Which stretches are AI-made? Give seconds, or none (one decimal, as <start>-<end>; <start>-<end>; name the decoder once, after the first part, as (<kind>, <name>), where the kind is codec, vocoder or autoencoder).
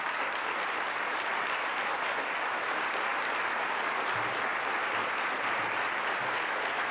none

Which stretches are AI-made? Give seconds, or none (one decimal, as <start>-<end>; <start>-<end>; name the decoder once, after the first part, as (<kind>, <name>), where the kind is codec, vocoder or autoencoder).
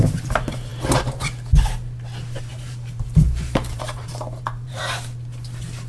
2.5-4.8 (vocoder, BigVGAN v2)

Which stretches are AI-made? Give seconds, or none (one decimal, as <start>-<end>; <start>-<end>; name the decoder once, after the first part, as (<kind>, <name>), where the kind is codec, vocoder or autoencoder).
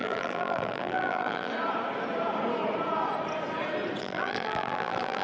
0.0-1.5 (vocoder, BigVGAN v2); 4.0-5.2